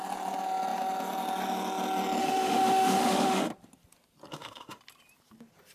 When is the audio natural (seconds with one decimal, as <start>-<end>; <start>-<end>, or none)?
0.0-2.2; 3.5-4.3; 4.8-5.7